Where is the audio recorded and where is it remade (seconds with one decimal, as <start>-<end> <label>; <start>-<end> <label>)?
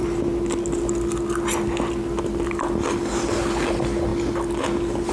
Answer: 0.0-5.1 recorded